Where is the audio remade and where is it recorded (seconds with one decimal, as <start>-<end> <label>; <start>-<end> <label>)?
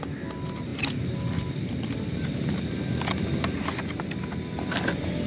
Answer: 0.0-5.3 recorded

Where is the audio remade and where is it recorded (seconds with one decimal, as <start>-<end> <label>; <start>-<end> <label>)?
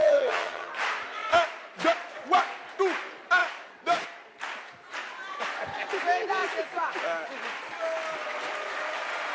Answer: 0.0-0.7 remade; 0.7-9.3 recorded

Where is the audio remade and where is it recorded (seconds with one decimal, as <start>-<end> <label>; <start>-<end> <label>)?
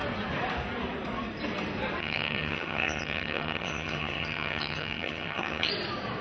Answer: 0.0-2.0 recorded; 2.0-5.7 remade; 5.7-6.2 recorded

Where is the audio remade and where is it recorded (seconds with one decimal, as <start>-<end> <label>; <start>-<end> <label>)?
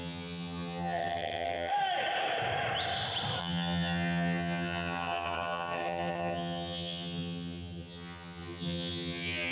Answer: 0.0-1.7 remade; 1.7-3.4 recorded; 3.4-9.5 remade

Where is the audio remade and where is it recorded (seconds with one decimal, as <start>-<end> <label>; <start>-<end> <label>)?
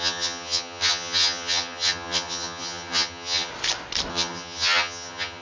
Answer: 0.0-3.5 remade; 3.5-4.1 recorded; 4.1-5.4 remade